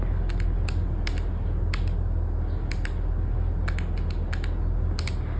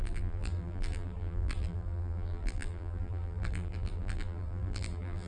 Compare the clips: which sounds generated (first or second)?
second